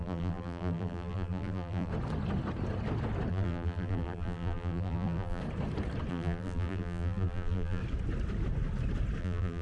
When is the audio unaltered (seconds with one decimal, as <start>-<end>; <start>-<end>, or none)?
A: 1.9-3.3; 5.4-6.1; 7.8-9.2